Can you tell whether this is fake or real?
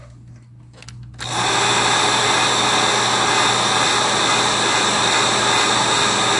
real